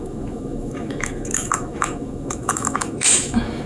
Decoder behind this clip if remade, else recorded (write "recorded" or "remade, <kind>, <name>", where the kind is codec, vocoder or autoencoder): remade, autoencoder, DAC-VAE